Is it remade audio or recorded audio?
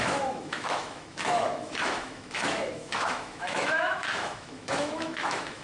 remade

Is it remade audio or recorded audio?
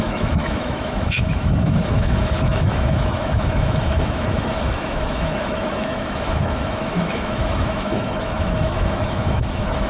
remade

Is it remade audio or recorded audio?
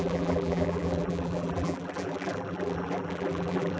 remade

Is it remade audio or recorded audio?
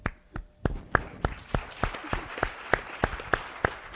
remade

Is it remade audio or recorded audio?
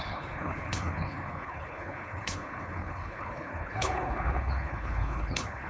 remade